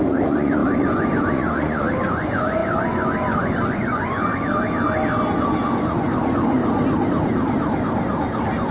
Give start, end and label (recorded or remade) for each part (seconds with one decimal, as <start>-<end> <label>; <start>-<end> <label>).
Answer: 0.0-4.3 remade; 4.3-5.6 recorded; 5.6-6.6 remade; 6.6-8.7 recorded